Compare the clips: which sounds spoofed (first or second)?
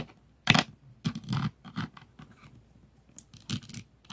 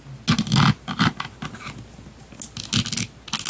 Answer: first